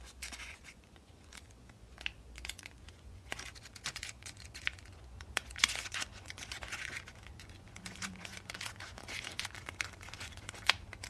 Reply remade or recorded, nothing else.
remade